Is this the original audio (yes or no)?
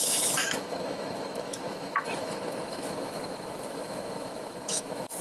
no